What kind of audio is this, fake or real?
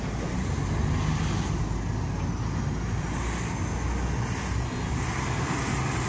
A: real